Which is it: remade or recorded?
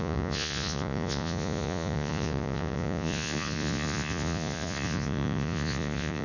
remade